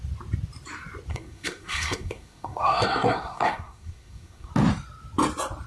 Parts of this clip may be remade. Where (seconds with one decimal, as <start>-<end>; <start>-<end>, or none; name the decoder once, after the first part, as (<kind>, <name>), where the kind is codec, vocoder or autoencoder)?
1.1-4.5 (codec, SNAC)